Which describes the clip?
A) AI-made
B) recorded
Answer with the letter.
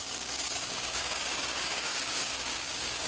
A